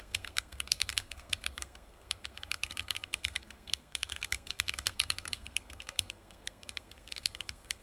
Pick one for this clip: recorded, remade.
remade